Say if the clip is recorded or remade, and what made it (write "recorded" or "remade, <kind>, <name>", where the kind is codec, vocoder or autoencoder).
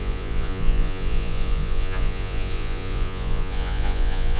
remade, vocoder, Vocos